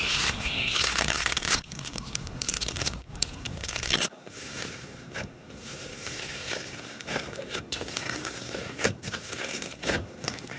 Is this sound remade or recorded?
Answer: remade